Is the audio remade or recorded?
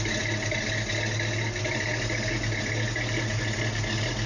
recorded